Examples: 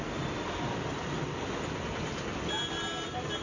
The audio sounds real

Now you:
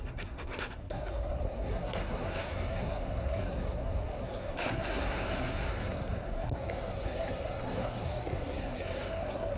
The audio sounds fake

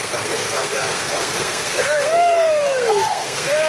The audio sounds fake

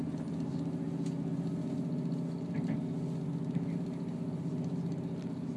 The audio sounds real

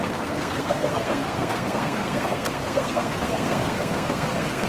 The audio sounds fake